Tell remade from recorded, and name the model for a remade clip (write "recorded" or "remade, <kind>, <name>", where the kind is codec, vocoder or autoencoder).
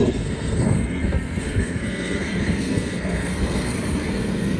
remade, codec, SNAC